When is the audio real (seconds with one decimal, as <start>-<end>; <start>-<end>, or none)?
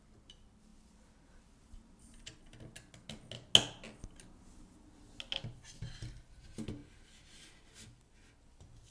0.0-8.9